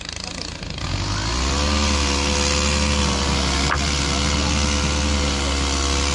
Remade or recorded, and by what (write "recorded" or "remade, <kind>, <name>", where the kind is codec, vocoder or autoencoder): recorded